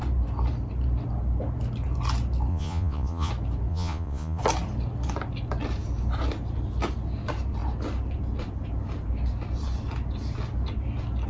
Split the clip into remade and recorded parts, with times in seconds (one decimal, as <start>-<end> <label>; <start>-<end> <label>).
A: 0.0-2.5 recorded; 2.5-3.3 remade; 3.3-3.7 recorded; 3.7-4.4 remade; 4.4-11.3 recorded